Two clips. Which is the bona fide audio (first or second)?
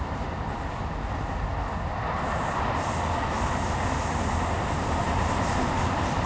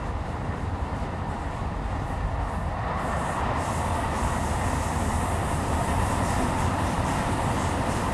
first